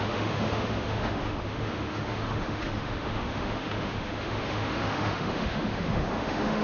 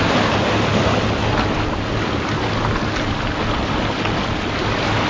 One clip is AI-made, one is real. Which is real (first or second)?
second